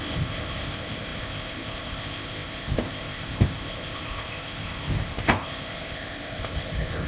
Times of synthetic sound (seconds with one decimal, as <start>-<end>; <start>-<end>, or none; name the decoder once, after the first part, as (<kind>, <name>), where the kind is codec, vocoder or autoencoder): 0.0-7.1 (codec, ZipCodec)

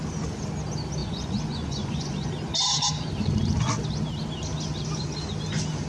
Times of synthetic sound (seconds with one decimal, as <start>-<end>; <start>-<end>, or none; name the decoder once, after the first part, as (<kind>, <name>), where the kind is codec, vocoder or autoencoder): 1.0-2.3 (vocoder, Vocos)

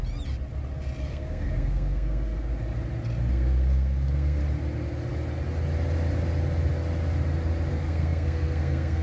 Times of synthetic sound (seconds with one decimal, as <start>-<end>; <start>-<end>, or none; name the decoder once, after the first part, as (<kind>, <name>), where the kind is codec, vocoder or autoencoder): 1.0-2.5 (codec, SNAC); 3.3-4.4; 7.7-9.0

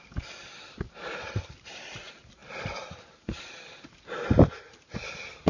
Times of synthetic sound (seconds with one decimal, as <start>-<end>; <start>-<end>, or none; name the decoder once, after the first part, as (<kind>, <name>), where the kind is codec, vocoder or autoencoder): none

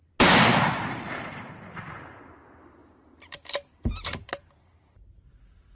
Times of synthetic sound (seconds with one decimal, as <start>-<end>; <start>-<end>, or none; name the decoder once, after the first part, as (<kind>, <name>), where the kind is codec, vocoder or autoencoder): 0.5-2.2 (vocoder, BigVGAN v2); 2.8-5.7

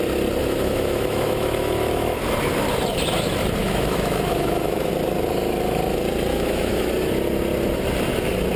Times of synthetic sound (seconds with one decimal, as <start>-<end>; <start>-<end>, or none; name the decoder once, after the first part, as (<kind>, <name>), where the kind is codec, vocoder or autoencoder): 0.4-2.2 (autoencoder, DAC-VAE); 3.6-4.9; 6.3-6.9

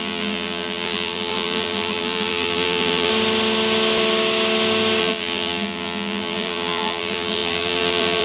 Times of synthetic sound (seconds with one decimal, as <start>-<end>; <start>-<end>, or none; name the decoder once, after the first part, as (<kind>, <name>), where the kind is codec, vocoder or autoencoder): 0.0-3.1 (vocoder, BigVGAN v2); 5.0-8.2